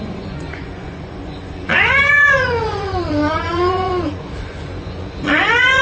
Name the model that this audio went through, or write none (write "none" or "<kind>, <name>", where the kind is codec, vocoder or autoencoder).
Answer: vocoder, Vocos